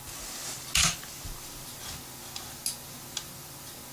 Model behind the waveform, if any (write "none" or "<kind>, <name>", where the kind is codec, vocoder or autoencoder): none